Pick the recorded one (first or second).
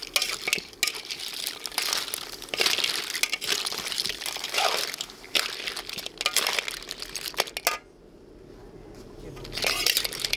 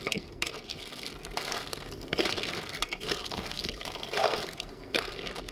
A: first